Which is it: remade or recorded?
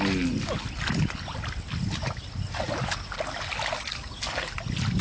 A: recorded